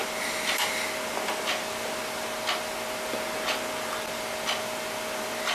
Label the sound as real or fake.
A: real